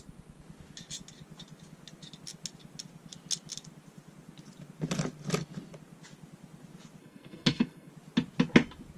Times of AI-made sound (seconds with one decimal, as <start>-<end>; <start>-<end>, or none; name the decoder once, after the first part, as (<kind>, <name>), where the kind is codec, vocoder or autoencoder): 7.0-7.9 (codec, SNAC)